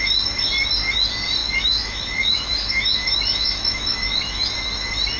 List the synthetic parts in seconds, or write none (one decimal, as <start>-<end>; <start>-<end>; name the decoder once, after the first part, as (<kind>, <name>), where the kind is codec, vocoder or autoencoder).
1.4-4.5 (autoencoder, DAC-VAE)